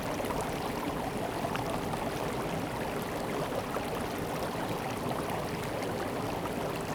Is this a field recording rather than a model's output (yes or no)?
yes